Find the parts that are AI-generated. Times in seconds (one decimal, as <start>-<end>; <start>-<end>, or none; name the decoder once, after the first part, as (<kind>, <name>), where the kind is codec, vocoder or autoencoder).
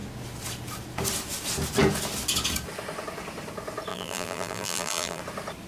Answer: 3.9-5.2 (vocoder, BigVGAN v2)